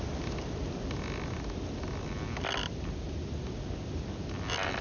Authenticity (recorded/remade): recorded